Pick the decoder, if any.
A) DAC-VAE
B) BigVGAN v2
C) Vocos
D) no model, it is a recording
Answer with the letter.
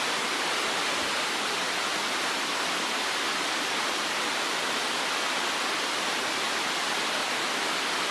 D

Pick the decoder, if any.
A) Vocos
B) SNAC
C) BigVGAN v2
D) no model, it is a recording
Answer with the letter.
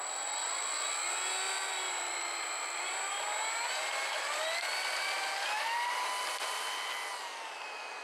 D